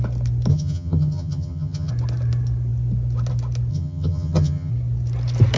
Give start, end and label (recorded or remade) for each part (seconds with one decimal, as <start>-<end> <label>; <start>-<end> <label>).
0.0-0.5 recorded; 0.5-1.9 remade; 1.9-3.7 recorded; 3.7-4.7 remade; 4.7-5.6 recorded